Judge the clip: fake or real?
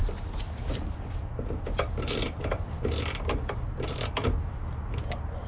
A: real